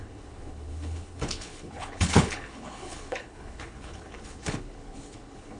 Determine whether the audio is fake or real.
fake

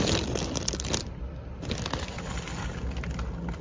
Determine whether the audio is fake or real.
real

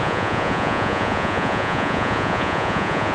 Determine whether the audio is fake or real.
fake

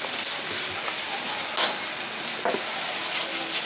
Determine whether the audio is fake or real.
real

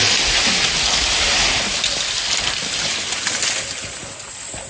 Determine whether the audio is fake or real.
real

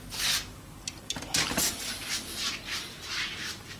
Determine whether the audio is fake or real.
real